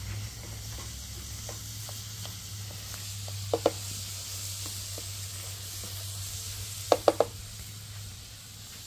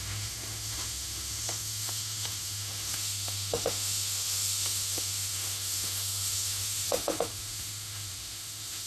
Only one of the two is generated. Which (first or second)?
second